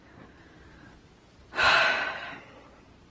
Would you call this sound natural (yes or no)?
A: yes